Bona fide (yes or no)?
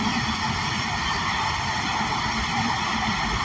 yes